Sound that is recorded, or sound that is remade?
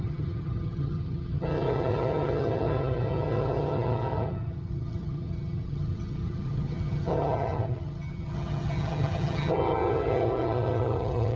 remade